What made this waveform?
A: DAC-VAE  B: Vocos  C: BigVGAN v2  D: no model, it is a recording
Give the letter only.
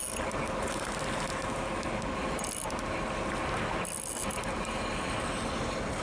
D